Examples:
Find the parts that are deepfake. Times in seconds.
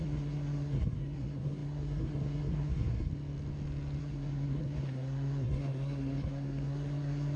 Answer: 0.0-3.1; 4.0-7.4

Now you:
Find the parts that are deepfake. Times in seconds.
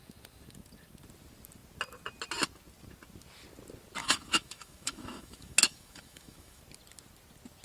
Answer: 4.0-6.6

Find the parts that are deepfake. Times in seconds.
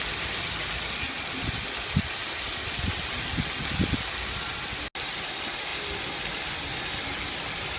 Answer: none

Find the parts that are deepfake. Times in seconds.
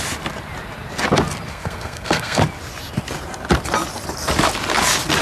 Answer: 1.5-2.4